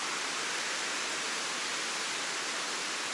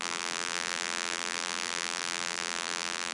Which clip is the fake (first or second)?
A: second